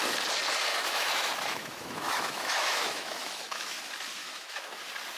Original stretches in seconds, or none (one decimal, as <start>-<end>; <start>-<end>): 0.0-0.7; 3.8-4.2; 4.8-5.2